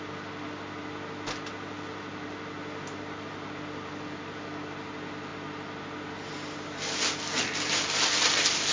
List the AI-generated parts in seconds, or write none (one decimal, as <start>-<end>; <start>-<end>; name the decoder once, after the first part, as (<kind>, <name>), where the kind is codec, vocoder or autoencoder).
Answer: none